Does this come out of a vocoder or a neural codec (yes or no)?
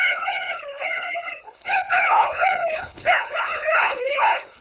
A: yes